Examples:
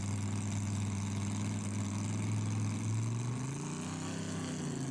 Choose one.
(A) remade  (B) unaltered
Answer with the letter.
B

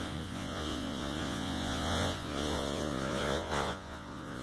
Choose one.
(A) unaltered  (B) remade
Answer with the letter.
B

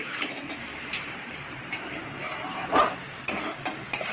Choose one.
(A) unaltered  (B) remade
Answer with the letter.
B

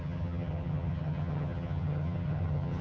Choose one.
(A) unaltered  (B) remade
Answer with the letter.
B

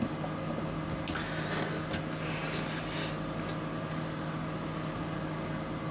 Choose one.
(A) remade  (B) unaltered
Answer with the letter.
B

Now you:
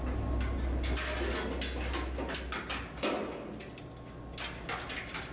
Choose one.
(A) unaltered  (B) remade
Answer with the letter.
A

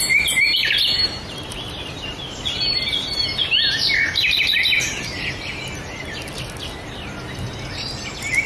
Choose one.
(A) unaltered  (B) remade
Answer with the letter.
A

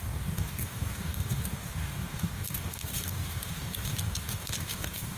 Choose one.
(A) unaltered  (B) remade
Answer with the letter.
B